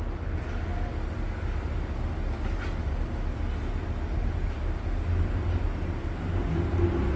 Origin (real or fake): real